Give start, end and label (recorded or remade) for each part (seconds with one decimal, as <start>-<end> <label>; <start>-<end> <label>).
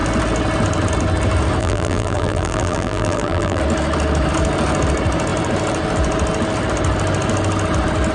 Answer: 0.0-1.6 recorded; 1.6-3.6 remade; 3.6-8.1 recorded